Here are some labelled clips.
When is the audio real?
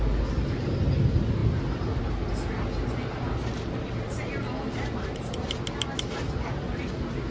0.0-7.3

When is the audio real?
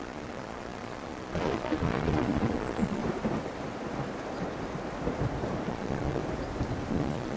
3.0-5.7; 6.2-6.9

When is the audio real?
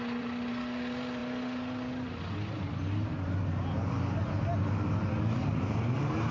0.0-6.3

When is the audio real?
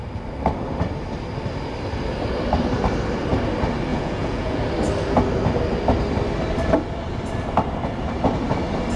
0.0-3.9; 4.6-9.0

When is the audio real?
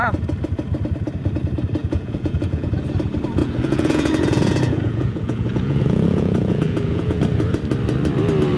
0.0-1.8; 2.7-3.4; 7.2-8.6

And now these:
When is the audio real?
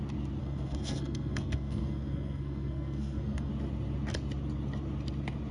0.0-0.4; 3.5-5.5